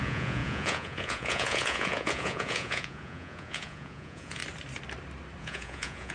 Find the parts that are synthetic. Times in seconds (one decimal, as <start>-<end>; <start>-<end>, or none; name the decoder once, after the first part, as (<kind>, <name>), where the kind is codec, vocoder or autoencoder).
0.0-4.4 (vocoder, Vocos); 5.4-6.1